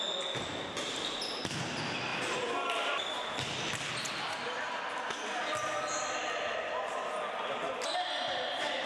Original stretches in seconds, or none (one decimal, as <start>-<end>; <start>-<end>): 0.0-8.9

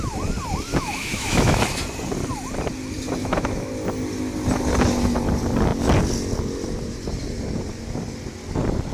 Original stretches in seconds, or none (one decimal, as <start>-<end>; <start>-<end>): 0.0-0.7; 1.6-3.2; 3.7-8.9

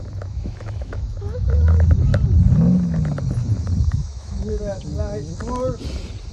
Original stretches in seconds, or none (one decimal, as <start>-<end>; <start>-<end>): 2.1-3.9; 4.9-6.3

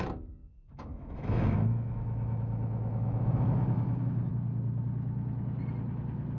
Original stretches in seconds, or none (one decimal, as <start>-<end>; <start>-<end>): 0.0-0.5; 4.3-6.4

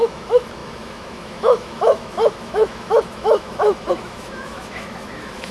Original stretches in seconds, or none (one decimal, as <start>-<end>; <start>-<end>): none

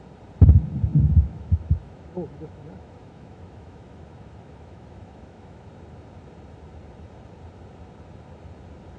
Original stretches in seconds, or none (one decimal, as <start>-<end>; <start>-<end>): 0.0-0.9; 5.7-9.0